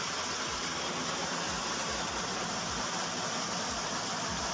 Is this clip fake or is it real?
real